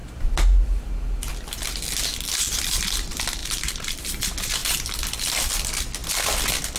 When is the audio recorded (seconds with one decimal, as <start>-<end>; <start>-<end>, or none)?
0.0-3.4; 4.0-6.8